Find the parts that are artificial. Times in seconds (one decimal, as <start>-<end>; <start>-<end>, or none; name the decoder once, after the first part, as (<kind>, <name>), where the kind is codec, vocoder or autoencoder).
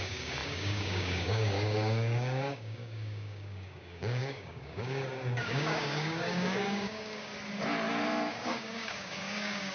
0.0-7.3 (codec, DAC); 8.3-9.7